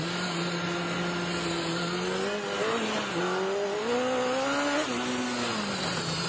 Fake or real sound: real